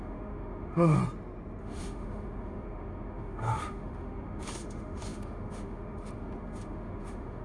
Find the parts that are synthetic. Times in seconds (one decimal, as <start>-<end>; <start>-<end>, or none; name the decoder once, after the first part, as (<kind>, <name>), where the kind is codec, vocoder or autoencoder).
0.0-1.0 (autoencoder, DAC-VAE); 1.6-7.4